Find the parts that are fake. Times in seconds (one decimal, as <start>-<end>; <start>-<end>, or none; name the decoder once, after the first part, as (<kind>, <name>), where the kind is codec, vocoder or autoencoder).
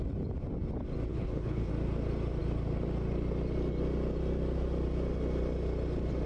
1.1-1.7 (codec, HILCodec)